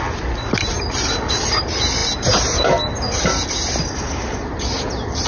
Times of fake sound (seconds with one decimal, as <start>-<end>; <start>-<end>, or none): none